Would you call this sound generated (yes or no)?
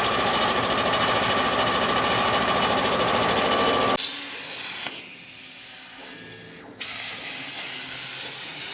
no